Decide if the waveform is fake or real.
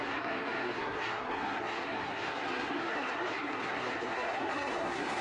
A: fake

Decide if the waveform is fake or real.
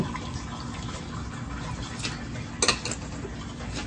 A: real